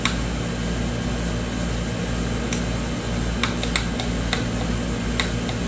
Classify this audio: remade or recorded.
recorded